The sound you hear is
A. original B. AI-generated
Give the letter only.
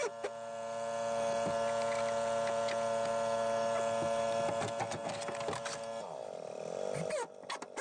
A